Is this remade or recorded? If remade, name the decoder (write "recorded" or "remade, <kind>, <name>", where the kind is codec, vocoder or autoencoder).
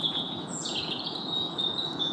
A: remade, vocoder, Vocos